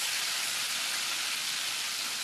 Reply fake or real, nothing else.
real